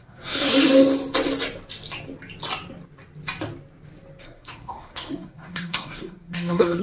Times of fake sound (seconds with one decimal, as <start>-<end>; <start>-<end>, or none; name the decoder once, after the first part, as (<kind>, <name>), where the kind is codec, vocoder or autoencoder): 0.0-0.5 (codec, SNAC); 4.2-6.8